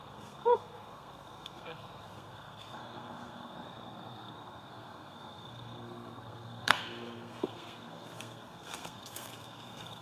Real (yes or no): no